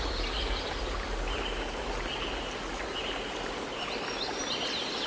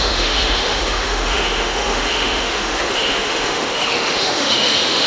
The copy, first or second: second